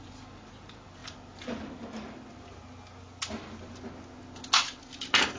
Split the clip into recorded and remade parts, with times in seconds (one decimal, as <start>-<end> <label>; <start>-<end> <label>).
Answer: 0.0-5.4 recorded